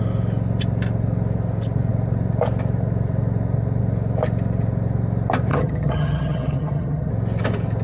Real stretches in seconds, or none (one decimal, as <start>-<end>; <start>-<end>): 0.0-5.5; 7.1-7.8